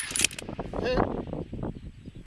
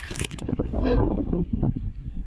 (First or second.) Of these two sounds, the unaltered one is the first